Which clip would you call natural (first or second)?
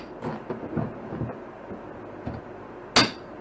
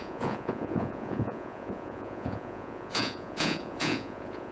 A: first